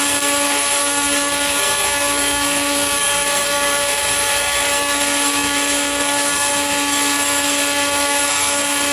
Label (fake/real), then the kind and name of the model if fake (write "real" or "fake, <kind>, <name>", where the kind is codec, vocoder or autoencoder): fake, codec, SNAC